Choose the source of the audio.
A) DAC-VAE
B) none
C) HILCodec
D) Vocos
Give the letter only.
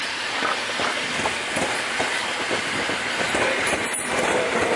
B